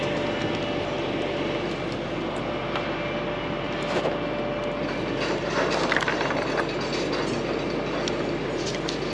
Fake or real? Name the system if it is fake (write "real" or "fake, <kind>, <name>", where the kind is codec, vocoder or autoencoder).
real